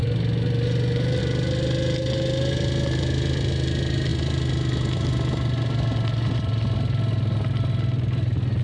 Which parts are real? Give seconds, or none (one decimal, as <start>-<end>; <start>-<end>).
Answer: 0.0-8.6